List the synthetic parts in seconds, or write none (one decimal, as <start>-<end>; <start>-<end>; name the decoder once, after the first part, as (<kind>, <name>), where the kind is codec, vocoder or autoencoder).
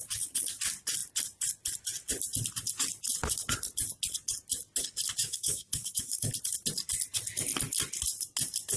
5.2-6.3 (autoencoder, DAC-VAE)